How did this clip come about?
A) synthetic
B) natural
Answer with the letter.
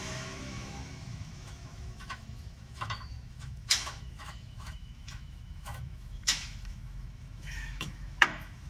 A